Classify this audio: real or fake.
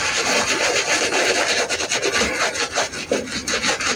real